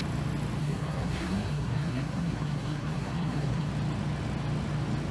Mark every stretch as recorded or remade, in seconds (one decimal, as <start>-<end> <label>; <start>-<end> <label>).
0.0-0.6 recorded; 0.6-3.7 remade; 3.7-5.1 recorded